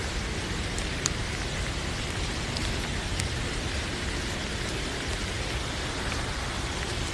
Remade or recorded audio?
recorded